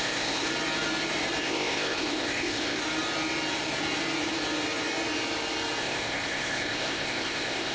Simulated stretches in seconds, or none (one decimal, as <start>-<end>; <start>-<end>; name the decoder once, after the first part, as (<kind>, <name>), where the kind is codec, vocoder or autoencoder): 0.0-0.5 (codec, ZipCodec); 1.4-2.8; 5.8-7.7